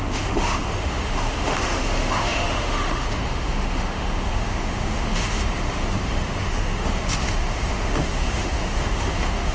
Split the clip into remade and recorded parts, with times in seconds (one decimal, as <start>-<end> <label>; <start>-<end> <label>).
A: 0.0-9.5 remade

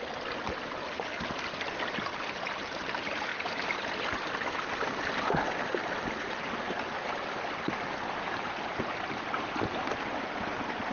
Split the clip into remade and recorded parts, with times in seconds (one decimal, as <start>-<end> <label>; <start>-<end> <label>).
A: 0.0-10.9 recorded

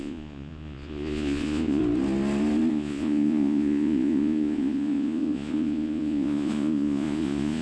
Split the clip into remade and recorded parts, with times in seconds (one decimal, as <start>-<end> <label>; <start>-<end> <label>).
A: 0.0-1.8 remade; 1.8-2.7 recorded; 2.7-7.6 remade

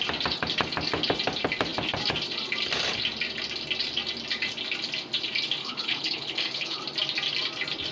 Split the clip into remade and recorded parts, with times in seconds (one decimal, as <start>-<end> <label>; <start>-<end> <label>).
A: 0.0-5.6 recorded; 5.6-6.8 remade; 6.8-7.9 recorded